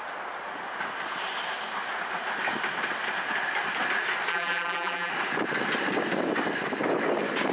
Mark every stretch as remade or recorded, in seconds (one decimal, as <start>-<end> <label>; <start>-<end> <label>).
0.0-4.3 recorded; 4.3-5.1 remade; 5.1-7.5 recorded